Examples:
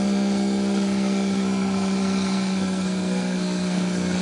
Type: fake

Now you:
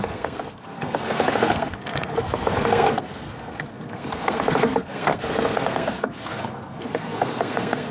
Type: fake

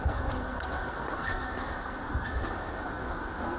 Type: fake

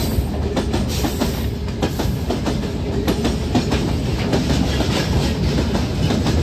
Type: real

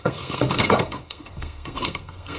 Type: fake